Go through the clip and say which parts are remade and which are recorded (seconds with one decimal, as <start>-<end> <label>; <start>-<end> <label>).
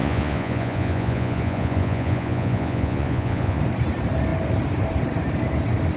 0.0-3.6 remade; 3.6-6.0 recorded